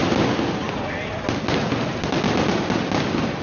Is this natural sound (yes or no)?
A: yes